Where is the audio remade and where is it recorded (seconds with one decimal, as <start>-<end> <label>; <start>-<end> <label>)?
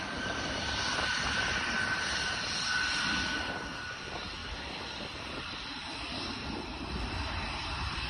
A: 0.0-8.1 remade